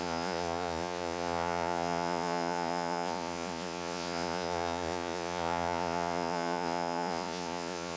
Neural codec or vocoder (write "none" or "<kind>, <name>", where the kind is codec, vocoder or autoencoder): vocoder, Vocos